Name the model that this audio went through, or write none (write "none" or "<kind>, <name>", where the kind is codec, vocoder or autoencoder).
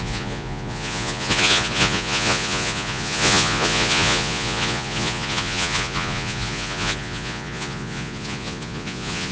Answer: vocoder, Vocos